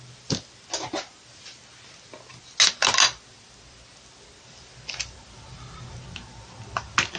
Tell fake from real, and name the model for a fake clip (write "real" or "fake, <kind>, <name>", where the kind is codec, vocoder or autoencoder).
real